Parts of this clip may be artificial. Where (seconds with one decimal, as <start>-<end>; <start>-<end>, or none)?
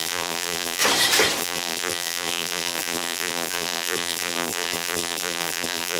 0.0-0.8; 1.4-6.0